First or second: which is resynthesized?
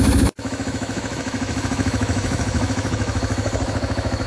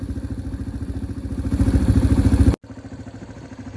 first